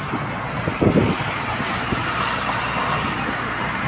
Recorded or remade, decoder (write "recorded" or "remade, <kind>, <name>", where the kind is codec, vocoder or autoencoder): recorded